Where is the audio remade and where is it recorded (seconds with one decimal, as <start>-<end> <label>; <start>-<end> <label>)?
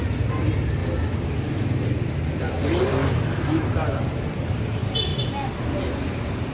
0.0-0.8 remade; 0.8-2.4 recorded; 2.4-3.0 remade; 3.0-3.6 recorded; 3.6-5.1 remade; 5.1-5.9 recorded; 5.9-6.5 remade